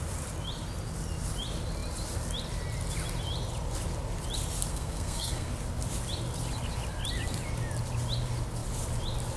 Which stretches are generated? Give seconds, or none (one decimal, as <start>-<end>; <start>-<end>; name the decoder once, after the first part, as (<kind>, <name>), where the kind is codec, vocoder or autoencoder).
4.7-5.5 (codec, SNAC)